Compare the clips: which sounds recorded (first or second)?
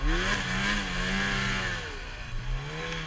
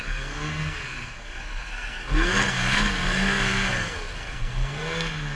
first